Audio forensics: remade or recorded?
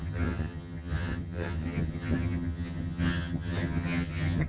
remade